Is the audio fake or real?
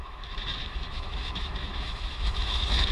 fake